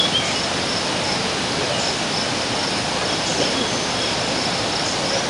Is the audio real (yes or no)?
yes